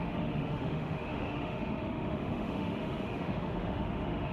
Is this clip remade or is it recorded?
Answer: remade